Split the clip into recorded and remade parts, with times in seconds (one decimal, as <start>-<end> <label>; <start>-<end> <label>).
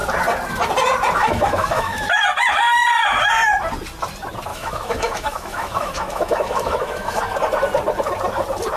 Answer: 0.0-1.2 recorded; 1.2-2.2 remade; 2.2-4.5 recorded; 4.5-7.2 remade; 7.2-8.8 recorded